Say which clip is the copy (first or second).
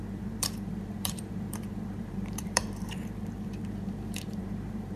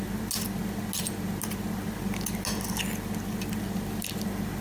first